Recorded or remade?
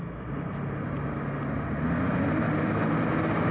recorded